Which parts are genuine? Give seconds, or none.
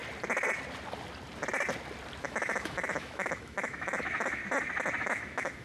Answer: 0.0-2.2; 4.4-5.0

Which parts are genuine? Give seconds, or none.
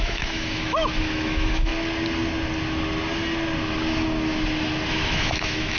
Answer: 1.7-4.9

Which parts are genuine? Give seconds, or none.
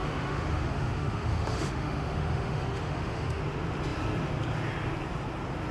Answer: 3.4-5.7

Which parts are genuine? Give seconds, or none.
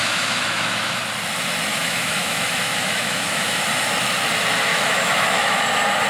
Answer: 1.0-1.7; 3.6-4.7; 5.6-6.1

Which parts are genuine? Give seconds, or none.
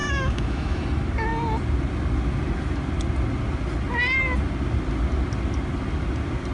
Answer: 0.8-6.5